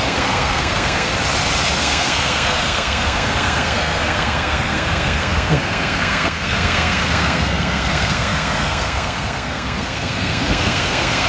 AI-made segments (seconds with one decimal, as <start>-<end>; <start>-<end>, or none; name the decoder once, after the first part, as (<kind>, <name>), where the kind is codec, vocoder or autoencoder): 0.0-1.1 (codec, SNAC); 1.8-11.3